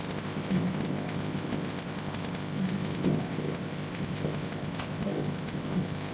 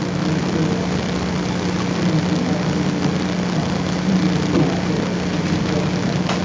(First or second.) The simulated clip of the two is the first